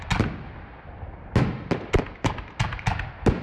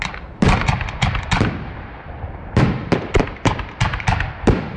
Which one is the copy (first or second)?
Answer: second